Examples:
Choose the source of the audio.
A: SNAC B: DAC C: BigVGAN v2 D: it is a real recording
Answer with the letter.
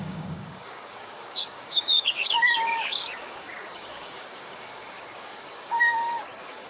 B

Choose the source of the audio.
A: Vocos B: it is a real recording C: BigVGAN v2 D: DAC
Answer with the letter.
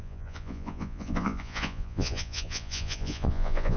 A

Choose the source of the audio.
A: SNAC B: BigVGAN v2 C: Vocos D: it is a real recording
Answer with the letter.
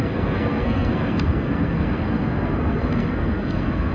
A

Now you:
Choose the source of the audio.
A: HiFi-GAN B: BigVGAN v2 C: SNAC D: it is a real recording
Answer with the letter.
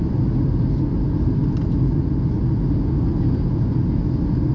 D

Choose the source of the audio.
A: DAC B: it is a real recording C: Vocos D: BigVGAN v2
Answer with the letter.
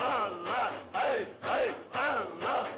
D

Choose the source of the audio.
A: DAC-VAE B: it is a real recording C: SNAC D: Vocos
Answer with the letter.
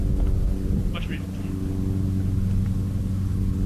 B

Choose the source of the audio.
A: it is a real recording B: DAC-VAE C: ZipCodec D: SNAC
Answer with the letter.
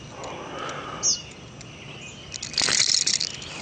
A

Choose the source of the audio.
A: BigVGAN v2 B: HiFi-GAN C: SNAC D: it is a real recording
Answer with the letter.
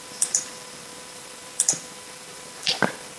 A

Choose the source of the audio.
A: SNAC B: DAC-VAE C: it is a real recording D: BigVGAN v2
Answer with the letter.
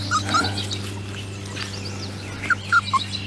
C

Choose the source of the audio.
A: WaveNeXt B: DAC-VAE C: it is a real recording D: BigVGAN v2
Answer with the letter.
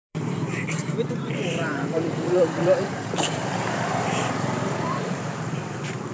D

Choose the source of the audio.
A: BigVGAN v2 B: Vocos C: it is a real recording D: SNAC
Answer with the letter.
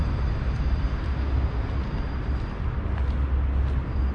C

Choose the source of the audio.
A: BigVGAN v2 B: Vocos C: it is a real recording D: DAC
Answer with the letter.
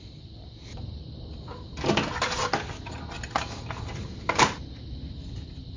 C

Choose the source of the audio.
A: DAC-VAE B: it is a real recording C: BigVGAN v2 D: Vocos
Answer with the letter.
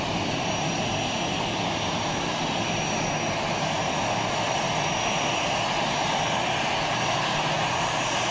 B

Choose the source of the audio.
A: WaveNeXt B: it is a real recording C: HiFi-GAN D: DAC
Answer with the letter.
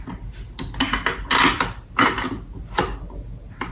B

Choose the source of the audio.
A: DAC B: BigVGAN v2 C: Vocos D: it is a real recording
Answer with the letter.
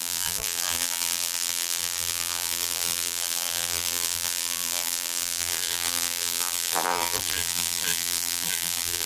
B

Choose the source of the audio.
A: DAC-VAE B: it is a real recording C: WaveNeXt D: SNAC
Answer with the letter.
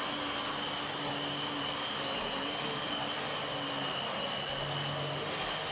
B